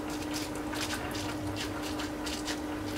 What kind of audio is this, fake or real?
real